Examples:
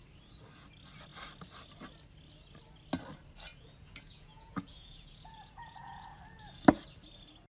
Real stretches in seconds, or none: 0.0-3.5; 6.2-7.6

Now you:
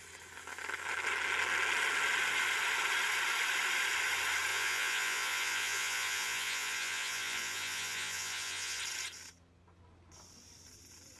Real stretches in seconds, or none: 0.0-4.5; 8.8-11.2

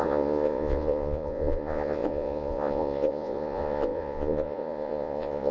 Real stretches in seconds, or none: none